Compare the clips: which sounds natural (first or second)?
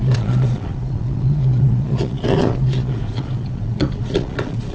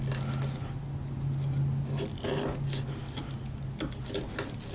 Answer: second